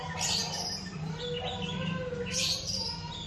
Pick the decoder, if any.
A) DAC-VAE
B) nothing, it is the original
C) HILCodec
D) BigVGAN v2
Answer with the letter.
D